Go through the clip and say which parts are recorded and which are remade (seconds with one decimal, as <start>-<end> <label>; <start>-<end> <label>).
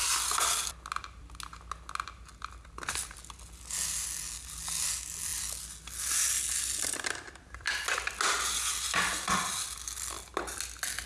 0.0-11.1 recorded